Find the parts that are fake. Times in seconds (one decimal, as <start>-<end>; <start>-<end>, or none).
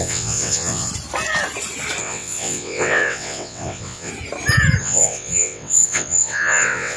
0.0-0.9; 2.0-4.1; 4.8-7.0